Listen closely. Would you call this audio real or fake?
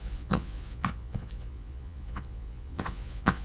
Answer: fake